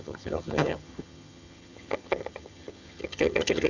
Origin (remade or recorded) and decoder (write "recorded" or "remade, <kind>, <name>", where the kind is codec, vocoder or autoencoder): remade, vocoder, HiFi-GAN